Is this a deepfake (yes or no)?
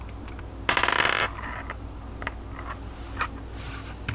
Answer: no